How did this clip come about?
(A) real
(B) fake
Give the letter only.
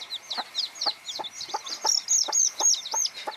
A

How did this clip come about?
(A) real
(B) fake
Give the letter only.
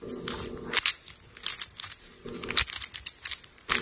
A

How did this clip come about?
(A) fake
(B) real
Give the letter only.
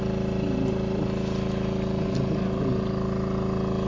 B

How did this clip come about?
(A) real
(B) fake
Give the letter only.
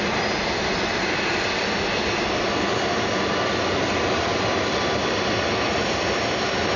A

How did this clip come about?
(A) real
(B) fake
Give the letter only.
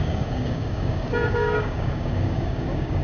B